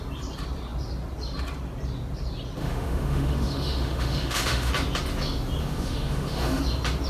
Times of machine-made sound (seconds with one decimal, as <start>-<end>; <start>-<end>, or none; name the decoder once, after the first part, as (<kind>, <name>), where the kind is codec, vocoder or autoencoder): 2.6-4.7 (autoencoder, DAC-VAE); 5.6-6.6